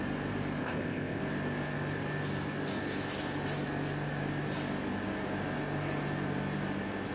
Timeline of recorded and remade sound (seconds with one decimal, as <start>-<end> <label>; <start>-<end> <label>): 0.0-0.6 recorded; 0.6-1.2 remade; 1.2-7.1 recorded